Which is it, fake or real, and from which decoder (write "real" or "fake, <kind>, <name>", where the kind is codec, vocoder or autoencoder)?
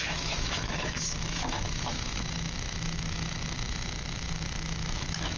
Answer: fake, autoencoder, DAC-VAE